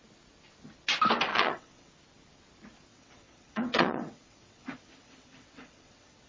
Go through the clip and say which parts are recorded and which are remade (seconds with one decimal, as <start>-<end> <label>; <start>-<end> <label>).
0.0-1.3 recorded; 1.3-1.9 remade; 1.9-2.9 recorded; 2.9-6.3 remade